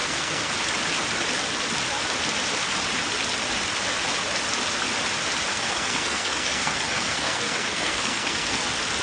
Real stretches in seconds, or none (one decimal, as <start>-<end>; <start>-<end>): 0.5-5.5; 8.6-9.0